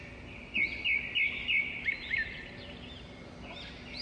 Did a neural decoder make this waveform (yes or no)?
no